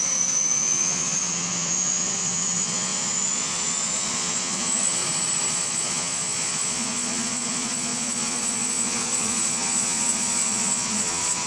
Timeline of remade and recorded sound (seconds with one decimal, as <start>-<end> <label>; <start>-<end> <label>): 0.0-5.0 remade; 5.0-5.5 recorded; 5.5-11.5 remade